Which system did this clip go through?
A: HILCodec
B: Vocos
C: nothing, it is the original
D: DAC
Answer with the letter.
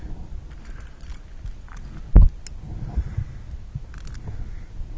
C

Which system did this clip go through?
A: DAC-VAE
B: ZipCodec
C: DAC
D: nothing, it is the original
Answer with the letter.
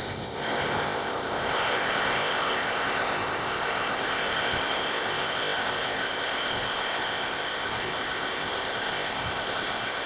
B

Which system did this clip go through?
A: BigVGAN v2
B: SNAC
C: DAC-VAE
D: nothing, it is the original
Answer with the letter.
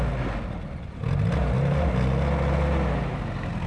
D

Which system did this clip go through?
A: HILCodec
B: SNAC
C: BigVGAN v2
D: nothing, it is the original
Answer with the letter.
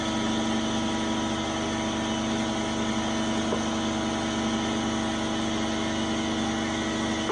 D